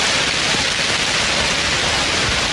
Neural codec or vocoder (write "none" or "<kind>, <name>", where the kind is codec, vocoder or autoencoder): none